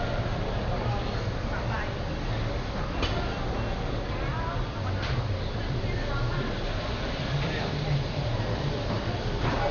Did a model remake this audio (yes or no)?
no